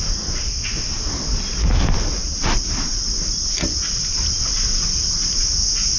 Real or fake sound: real